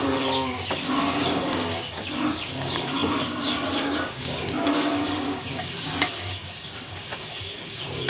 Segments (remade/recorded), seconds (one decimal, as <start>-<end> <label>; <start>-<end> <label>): 0.0-8.1 remade